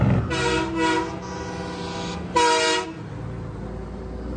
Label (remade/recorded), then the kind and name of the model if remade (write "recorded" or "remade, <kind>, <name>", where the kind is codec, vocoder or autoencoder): recorded